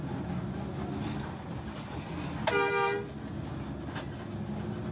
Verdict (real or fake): real